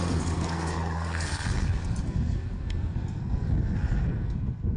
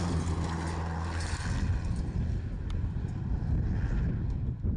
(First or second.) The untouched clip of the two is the second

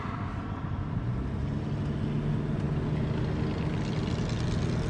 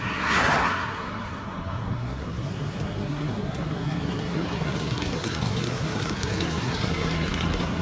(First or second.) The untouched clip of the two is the first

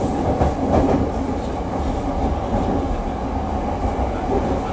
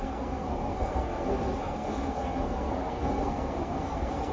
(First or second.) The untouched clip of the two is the first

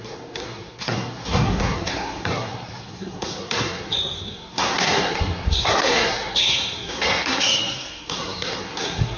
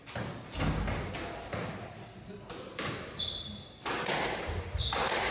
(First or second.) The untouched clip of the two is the second